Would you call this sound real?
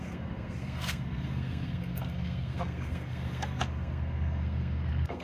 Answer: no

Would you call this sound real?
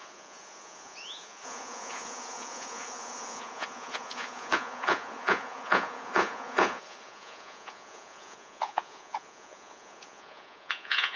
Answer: no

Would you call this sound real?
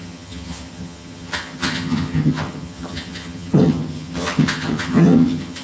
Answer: no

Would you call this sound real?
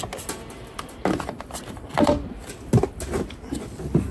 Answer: yes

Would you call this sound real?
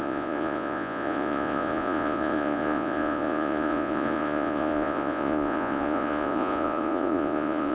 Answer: no